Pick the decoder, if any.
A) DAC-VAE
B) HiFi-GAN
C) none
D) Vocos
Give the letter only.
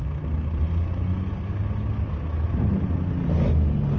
C